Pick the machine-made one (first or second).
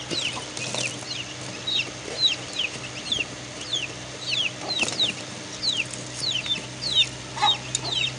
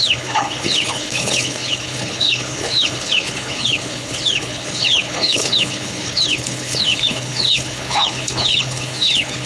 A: second